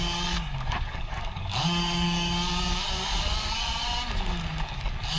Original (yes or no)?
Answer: no